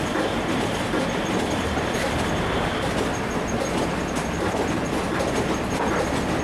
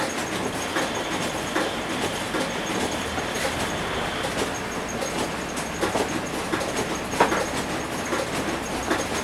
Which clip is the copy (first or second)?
first